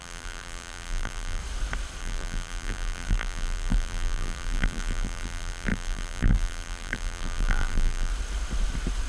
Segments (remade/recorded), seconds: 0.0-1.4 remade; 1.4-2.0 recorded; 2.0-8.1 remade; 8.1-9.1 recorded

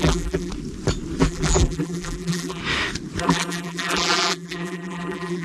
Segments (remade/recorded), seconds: 0.0-0.5 remade; 0.5-1.2 recorded; 1.2-2.6 remade; 2.6-3.2 recorded; 3.2-5.4 remade